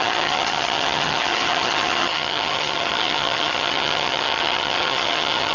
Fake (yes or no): yes